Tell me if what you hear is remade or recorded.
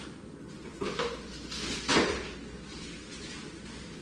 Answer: recorded